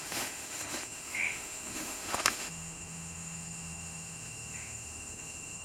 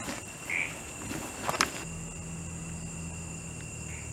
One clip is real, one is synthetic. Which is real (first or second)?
second